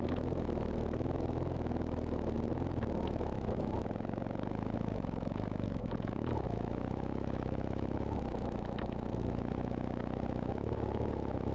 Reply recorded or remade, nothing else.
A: remade